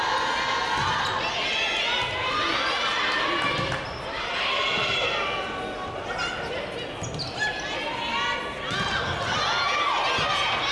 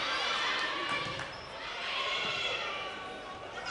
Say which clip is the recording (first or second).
first